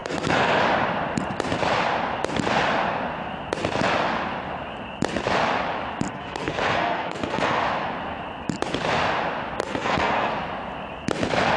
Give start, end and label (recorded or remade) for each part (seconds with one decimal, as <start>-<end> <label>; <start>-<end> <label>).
0.0-0.6 remade; 0.6-6.1 recorded; 6.1-7.6 remade; 7.6-9.6 recorded; 9.6-10.3 remade; 10.3-11.6 recorded

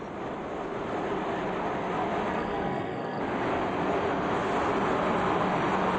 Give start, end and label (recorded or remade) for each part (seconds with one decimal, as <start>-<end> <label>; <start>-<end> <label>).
0.0-2.3 recorded; 2.3-3.2 remade; 3.2-6.0 recorded

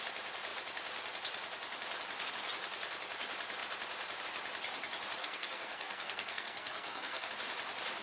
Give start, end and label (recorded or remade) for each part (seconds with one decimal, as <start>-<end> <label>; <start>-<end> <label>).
0.0-5.2 recorded; 5.2-7.3 remade; 7.3-8.0 recorded

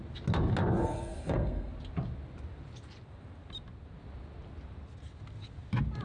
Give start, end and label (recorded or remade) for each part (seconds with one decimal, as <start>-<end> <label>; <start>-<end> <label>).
0.0-0.8 recorded; 0.8-1.7 remade; 1.7-6.0 recorded